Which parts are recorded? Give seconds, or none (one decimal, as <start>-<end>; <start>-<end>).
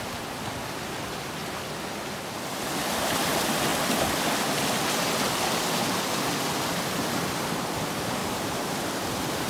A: 0.0-8.2; 8.9-9.5